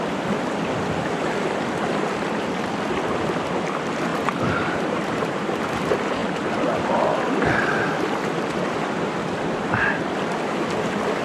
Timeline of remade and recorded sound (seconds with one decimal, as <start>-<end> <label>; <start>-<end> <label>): 0.0-4.1 recorded; 4.1-5.4 remade; 5.4-11.2 recorded